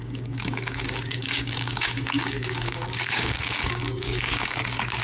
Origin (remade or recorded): remade